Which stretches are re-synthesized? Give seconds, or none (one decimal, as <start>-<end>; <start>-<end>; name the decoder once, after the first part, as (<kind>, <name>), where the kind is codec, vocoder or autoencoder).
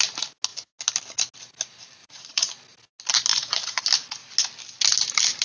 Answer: 2.0-2.5 (vocoder, Vocos); 3.3-3.8